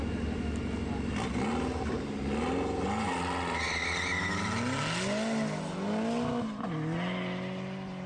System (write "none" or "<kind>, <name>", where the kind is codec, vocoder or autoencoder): none